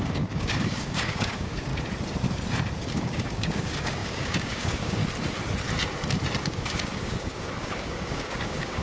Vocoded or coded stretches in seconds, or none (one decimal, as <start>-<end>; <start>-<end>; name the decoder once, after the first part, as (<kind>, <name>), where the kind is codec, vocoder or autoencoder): 0.0-1.7 (codec, DAC); 2.9-5.0; 6.4-8.8